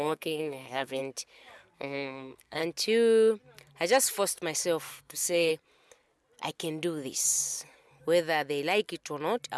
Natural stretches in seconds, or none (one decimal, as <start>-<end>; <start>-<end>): 1.0-1.7; 2.6-4.9; 5.5-9.6